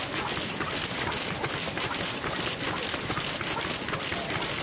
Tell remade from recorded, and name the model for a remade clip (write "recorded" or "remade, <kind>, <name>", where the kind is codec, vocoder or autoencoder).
recorded